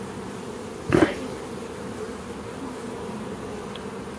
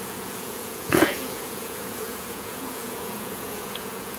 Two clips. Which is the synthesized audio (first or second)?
second